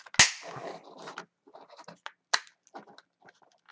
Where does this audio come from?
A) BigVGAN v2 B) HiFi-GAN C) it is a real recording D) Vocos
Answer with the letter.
C